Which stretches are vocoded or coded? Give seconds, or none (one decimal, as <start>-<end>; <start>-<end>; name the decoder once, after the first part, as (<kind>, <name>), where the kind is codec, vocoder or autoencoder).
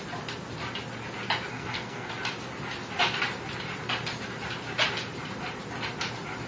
1.5-2.1 (codec, SNAC)